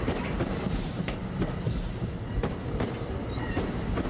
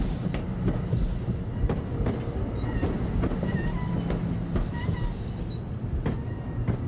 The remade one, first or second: first